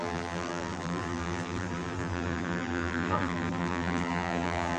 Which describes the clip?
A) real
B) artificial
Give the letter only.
B